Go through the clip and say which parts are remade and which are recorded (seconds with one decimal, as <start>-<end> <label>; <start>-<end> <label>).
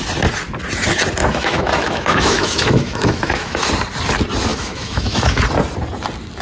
0.0-1.2 recorded; 1.2-3.7 remade; 3.7-4.5 recorded; 4.5-5.4 remade; 5.4-6.4 recorded